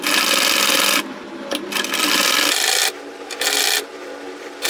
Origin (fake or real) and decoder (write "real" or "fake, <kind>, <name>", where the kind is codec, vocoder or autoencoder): real